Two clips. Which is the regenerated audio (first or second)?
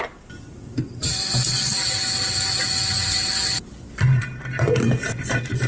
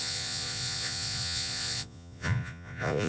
second